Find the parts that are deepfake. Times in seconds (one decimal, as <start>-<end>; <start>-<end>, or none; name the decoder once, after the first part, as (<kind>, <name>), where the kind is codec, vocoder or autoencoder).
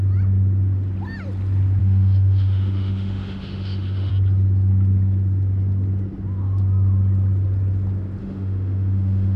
1.8-4.1 (autoencoder, DAC-VAE); 8.2-9.4